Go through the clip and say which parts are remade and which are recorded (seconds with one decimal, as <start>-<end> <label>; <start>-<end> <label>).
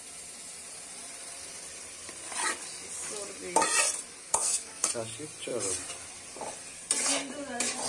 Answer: 0.0-4.2 recorded; 4.2-4.9 remade; 4.9-7.9 recorded